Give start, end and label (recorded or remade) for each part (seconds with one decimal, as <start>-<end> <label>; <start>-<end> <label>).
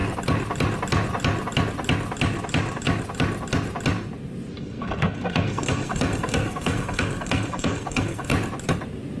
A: 0.0-4.6 recorded; 4.6-8.3 remade; 8.3-9.2 recorded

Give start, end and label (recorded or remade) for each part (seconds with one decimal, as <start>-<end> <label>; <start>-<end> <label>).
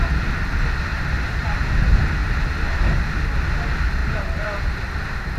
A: 0.0-0.9 recorded; 0.9-1.6 remade; 1.6-4.0 recorded; 4.0-5.4 remade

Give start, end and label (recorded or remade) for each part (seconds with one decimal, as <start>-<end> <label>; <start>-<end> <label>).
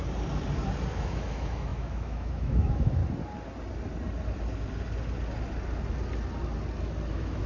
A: 0.0-0.9 recorded; 0.9-3.0 remade; 3.0-7.1 recorded; 7.1-7.5 remade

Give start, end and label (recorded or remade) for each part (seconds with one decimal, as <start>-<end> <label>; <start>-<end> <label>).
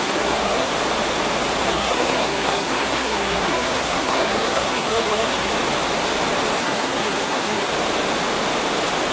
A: 0.0-0.7 remade; 0.7-1.6 recorded; 1.6-5.5 remade; 5.5-6.6 recorded; 6.6-7.7 remade; 7.7-9.1 recorded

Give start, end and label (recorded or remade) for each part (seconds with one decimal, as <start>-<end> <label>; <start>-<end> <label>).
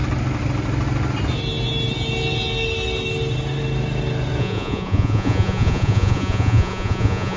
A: 0.0-4.4 recorded; 4.4-7.4 remade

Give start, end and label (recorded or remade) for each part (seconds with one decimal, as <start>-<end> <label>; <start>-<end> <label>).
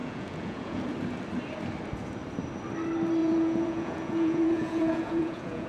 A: 0.0-0.8 remade; 0.8-3.2 recorded; 3.2-5.7 remade